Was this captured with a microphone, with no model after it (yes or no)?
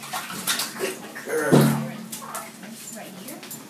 yes